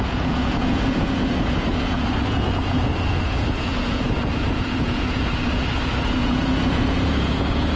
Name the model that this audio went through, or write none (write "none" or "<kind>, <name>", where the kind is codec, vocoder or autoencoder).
vocoder, Vocos